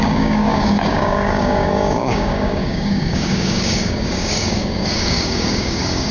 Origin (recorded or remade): remade